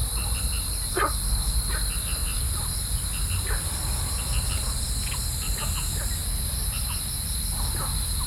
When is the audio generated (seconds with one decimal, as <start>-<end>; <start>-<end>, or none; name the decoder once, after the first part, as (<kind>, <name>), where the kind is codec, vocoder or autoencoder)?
0.0-1.2 (vocoder, BigVGAN v2)